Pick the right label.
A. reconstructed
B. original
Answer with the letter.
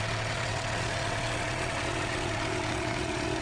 A